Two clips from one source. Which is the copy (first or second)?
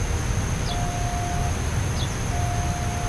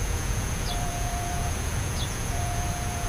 second